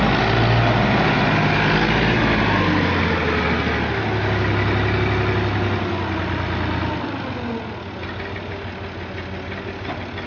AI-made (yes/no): no